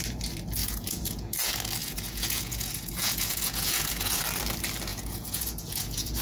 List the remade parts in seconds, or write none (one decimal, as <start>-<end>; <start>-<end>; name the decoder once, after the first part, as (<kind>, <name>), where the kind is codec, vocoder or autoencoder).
0.6-1.3 (vocoder, Vocos); 1.8-4.2; 4.9-6.2